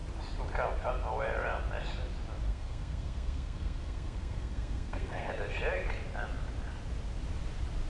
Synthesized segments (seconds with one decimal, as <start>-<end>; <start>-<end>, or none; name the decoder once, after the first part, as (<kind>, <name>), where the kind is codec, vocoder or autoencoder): 2.5-5.3 (codec, SNAC)